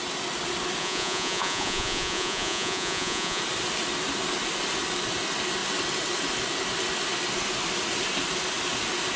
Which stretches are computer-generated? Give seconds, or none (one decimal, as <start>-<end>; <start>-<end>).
0.8-3.4